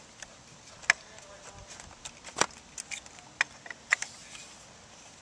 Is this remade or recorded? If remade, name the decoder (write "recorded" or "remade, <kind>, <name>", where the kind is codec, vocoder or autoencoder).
recorded